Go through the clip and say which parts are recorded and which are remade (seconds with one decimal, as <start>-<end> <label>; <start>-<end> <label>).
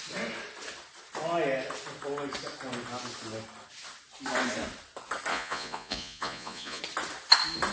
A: 0.0-5.3 recorded; 5.3-6.8 remade; 6.8-7.7 recorded